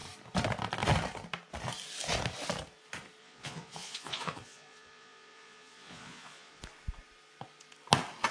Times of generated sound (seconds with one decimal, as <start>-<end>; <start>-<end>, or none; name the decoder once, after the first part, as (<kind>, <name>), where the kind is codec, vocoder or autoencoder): 3.2-6.6 (vocoder, Vocos)